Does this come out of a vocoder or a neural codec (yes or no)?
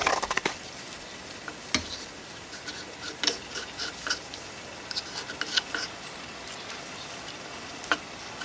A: no